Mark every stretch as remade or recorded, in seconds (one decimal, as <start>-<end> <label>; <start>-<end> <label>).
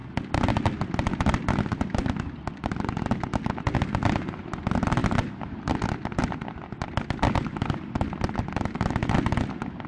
0.0-9.9 recorded